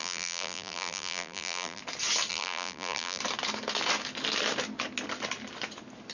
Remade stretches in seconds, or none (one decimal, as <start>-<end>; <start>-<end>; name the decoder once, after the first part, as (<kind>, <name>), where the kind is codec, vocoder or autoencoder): 0.0-1.8 (vocoder, BigVGAN v2); 2.3-3.2